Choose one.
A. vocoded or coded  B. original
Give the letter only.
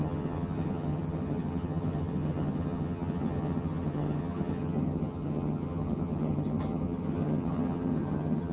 A